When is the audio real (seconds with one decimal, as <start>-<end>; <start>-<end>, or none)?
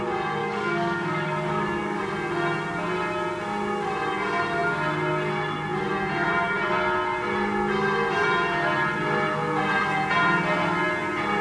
0.0-0.4; 2.0-11.4